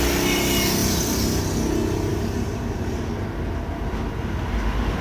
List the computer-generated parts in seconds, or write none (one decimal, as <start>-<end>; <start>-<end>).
0.8-1.4; 2.1-3.0